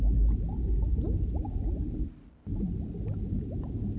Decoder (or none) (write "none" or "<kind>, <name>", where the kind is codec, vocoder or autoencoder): none